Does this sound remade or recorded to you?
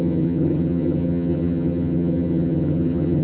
remade